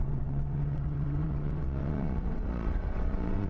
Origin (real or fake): fake